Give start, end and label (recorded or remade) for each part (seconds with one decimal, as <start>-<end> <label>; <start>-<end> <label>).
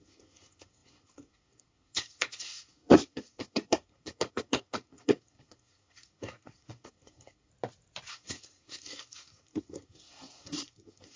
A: 0.0-7.5 remade; 7.5-8.1 recorded; 8.1-11.2 remade